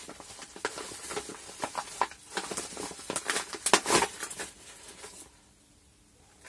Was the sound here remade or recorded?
recorded